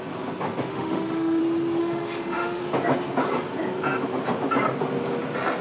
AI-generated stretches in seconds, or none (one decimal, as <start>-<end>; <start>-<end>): 0.7-1.4; 1.8-2.6